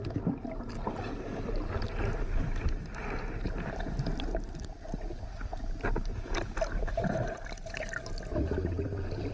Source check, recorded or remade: recorded